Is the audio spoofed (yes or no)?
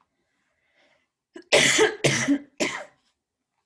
no